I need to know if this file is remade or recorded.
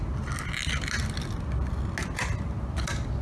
recorded